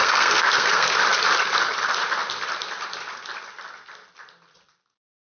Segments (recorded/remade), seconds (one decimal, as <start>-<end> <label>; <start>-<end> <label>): 0.0-0.9 remade; 0.9-5.3 recorded